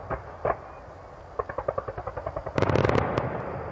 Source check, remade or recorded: recorded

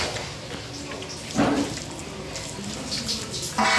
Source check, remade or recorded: recorded